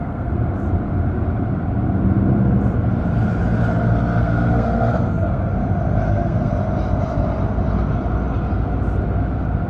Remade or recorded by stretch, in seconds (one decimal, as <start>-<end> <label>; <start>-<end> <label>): 0.0-0.4 remade; 0.4-4.2 recorded; 4.2-5.5 remade; 5.5-6.1 recorded; 6.1-6.5 remade; 6.5-9.7 recorded